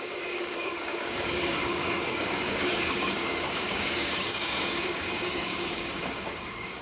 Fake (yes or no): yes